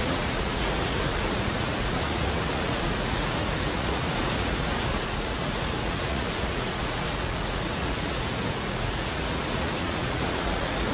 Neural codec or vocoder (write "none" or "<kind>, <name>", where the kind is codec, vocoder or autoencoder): vocoder, Vocos